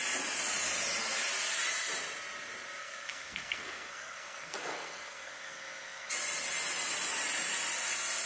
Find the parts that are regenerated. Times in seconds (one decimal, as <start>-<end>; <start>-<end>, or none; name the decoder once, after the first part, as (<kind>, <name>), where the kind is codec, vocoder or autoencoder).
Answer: 2.8-6.1 (codec, SNAC)